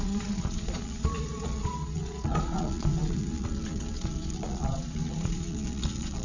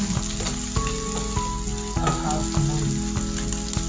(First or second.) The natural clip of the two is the second